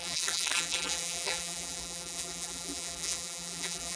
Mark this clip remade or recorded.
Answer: remade